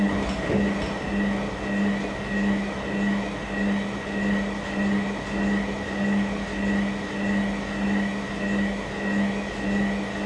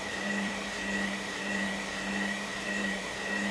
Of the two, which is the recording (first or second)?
first